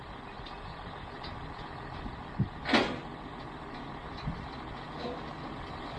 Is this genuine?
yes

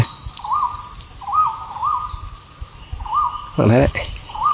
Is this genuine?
yes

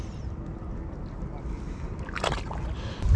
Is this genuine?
yes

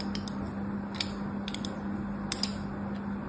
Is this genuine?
yes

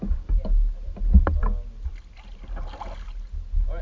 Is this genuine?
yes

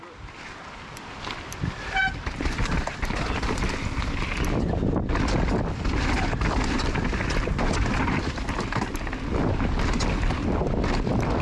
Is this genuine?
yes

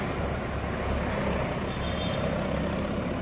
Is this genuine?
yes